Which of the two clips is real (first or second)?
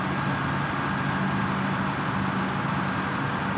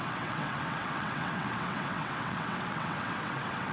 first